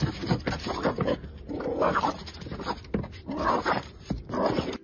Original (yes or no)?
yes